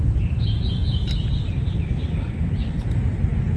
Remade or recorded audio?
remade